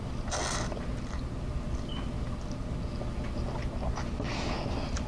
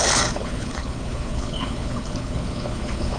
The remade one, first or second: second